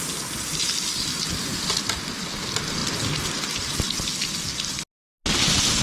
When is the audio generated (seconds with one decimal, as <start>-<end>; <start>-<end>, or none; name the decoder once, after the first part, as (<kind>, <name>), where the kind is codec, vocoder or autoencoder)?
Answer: none